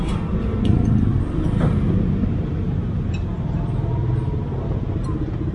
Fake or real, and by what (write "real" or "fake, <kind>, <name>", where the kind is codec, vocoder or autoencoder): real